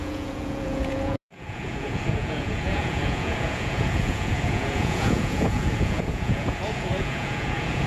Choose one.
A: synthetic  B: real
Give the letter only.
A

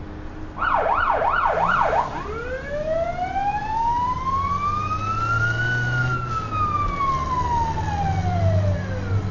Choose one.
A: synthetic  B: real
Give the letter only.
B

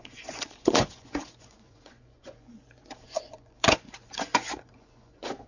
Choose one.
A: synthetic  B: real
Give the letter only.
A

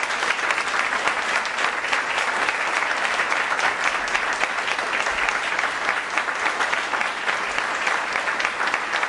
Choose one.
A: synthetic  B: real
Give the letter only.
B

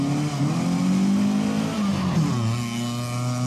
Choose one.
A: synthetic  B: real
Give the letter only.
B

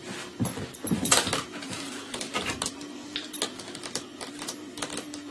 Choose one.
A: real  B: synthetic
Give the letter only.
A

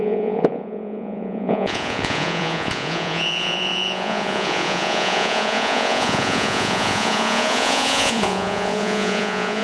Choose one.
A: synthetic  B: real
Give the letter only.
A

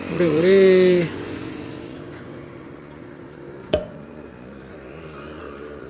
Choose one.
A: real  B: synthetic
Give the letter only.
B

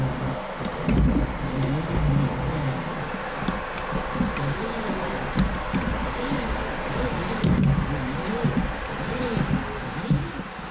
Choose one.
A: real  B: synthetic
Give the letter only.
A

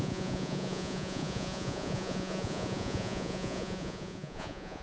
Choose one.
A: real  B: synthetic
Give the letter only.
B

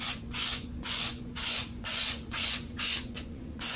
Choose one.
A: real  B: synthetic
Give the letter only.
B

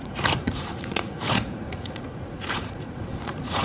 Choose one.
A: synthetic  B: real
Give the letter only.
A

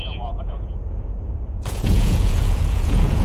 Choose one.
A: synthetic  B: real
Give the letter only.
A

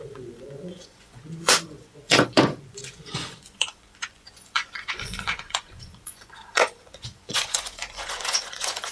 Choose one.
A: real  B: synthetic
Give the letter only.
B